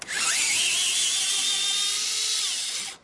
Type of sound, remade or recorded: recorded